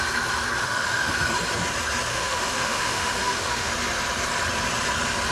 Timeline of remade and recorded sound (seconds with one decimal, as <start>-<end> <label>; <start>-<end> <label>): 0.0-0.6 recorded; 0.6-1.1 remade; 1.1-2.1 recorded; 2.1-3.7 remade; 3.7-5.3 recorded